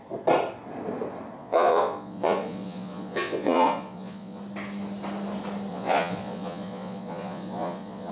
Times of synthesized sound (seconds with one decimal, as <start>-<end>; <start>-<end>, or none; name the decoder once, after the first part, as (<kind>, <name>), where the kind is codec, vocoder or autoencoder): 1.4-4.4 (vocoder, Vocos); 5.7-8.1